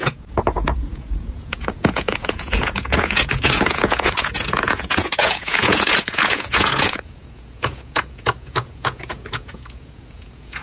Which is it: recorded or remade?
remade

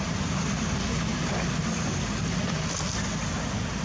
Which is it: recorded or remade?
recorded